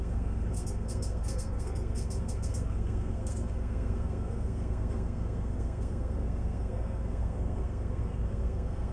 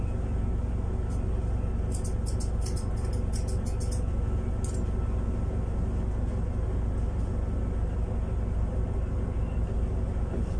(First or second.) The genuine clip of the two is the second